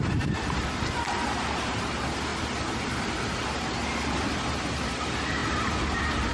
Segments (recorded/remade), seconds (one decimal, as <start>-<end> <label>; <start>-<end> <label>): 0.0-3.8 remade; 3.8-4.3 recorded; 4.3-5.4 remade; 5.4-6.3 recorded